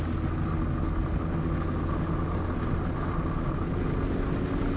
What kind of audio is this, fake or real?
real